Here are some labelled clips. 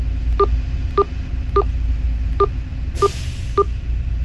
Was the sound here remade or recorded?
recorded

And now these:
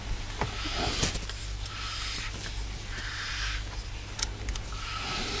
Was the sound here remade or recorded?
recorded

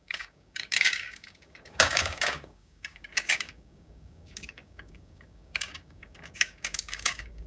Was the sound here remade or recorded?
remade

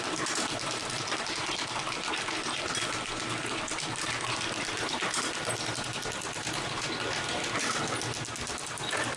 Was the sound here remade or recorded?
recorded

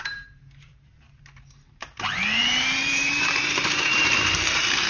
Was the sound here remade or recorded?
remade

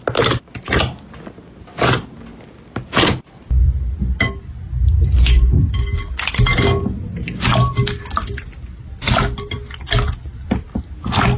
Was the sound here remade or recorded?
recorded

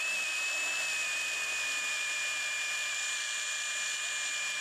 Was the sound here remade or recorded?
recorded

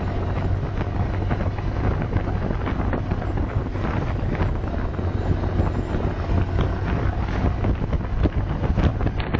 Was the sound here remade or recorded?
recorded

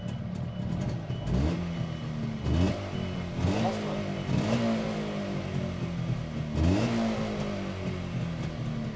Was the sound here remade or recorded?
recorded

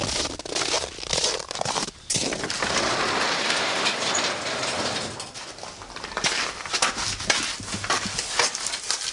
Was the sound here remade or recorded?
recorded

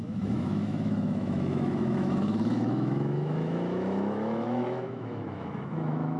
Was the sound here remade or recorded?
remade